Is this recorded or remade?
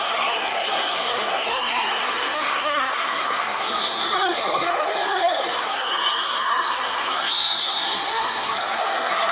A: remade